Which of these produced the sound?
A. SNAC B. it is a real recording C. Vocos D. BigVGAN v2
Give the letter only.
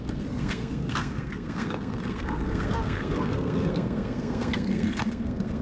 A